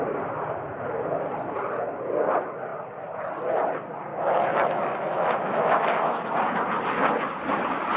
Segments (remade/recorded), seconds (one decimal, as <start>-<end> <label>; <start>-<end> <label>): 0.0-4.1 recorded; 4.1-6.3 remade; 6.3-8.0 recorded